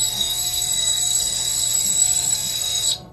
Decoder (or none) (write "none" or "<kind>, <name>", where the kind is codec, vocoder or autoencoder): codec, SNAC